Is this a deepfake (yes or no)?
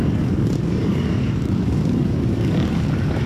yes